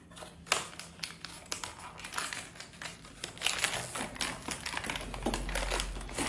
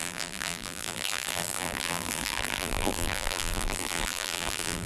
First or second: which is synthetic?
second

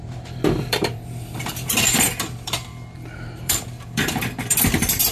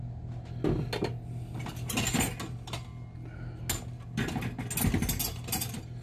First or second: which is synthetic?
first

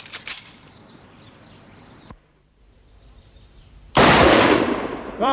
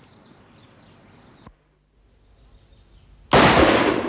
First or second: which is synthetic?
first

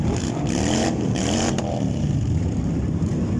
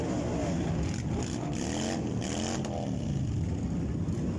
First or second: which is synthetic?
first